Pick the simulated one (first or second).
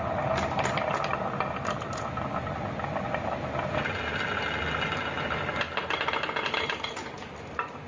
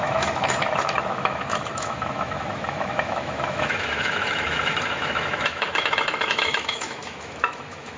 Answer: second